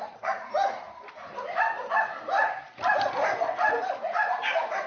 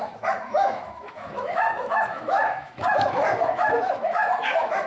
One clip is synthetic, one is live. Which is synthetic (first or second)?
second